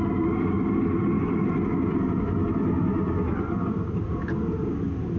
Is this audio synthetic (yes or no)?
no